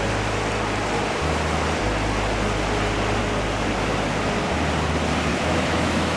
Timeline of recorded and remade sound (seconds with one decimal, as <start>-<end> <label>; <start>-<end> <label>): 0.0-5.3 recorded; 5.3-6.2 remade